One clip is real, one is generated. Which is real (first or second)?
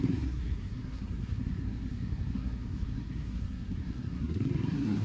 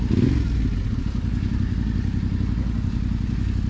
second